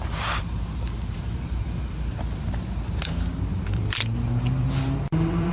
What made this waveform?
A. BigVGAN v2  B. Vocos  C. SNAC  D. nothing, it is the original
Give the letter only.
A